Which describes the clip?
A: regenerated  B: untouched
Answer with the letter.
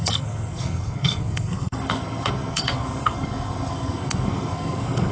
A